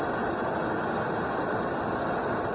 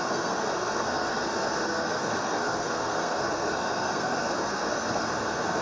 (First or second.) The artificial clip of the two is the second